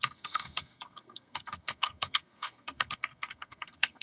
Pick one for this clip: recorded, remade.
remade